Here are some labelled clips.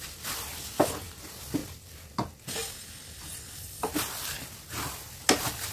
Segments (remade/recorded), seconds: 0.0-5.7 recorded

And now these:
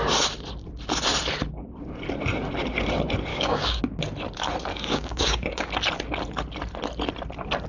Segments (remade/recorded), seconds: 0.0-3.3 recorded; 3.3-3.8 remade; 3.8-4.7 recorded; 4.7-5.7 remade; 5.7-7.7 recorded

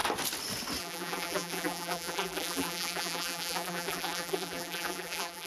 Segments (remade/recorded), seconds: 0.0-0.8 recorded; 0.8-5.5 remade

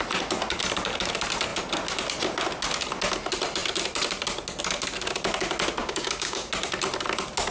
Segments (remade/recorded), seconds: 0.0-5.8 recorded; 5.8-6.5 remade; 6.5-7.5 recorded

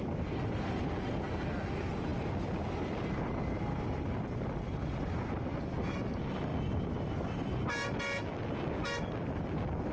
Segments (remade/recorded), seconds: 0.0-9.9 recorded

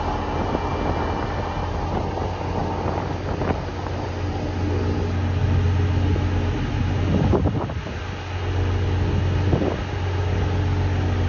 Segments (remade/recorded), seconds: 0.0-11.3 recorded

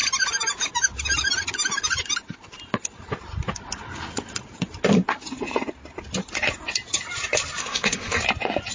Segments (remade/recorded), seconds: 0.0-7.6 recorded; 7.6-8.2 remade; 8.2-8.7 recorded

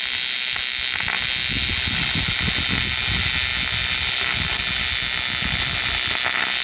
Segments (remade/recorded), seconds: 0.0-6.6 recorded